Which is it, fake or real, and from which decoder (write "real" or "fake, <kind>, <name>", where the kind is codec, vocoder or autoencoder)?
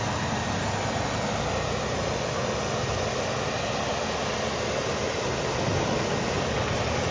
real